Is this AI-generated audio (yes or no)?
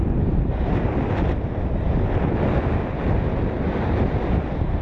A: no